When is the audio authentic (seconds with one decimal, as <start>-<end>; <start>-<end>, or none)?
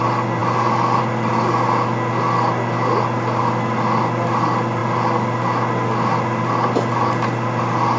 0.0-8.0